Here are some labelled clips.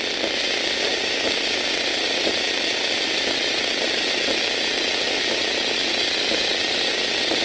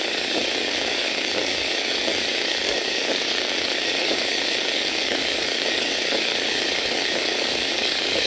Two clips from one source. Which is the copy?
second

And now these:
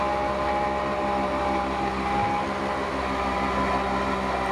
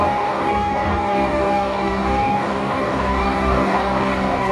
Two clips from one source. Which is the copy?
second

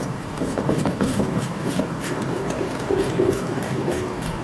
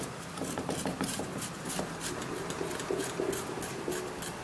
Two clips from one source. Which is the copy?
first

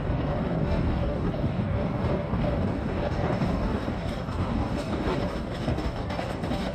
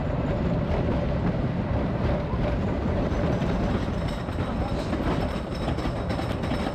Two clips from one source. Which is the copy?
first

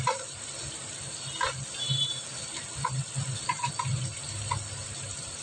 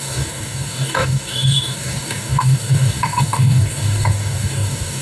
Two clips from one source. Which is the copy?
second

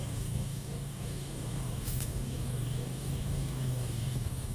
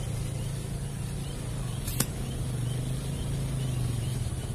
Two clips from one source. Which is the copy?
first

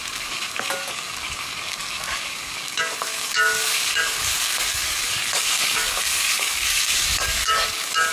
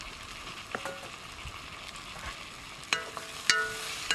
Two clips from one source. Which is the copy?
first